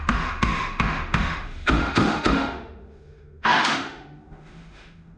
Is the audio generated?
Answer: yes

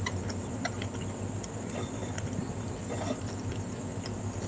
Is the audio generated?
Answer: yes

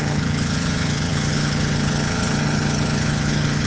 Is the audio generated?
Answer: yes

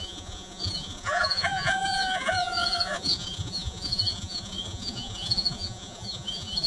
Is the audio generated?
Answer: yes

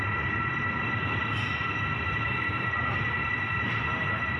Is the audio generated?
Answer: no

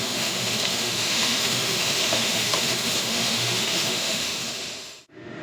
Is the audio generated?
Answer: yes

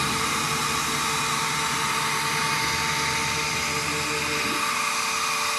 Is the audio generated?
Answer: no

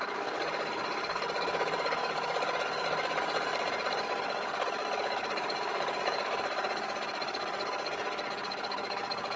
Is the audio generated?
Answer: yes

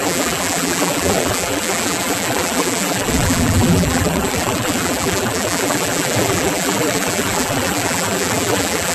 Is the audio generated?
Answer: yes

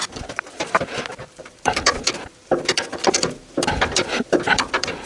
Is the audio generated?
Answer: yes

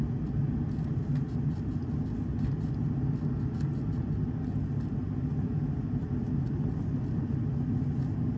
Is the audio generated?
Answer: no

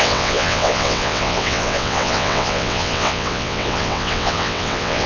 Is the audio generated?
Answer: yes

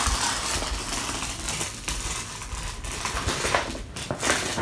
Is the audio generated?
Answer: no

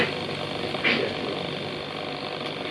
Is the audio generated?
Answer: no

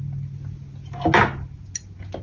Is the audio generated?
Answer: no